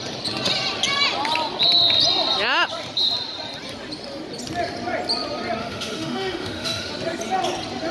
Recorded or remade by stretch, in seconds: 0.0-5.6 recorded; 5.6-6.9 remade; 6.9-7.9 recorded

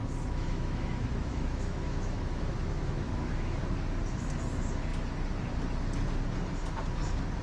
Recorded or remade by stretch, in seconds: 0.0-3.6 remade; 3.6-7.4 recorded

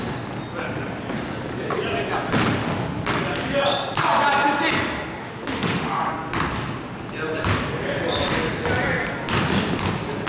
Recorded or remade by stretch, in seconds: 0.0-5.2 recorded; 5.2-6.1 remade; 6.1-10.3 recorded

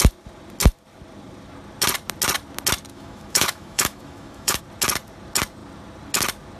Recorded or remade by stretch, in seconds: 0.0-2.9 recorded; 2.9-4.6 remade; 4.6-6.6 recorded